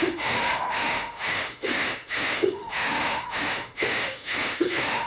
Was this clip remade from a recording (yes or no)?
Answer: yes